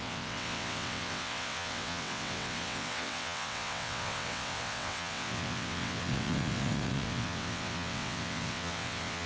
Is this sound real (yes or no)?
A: no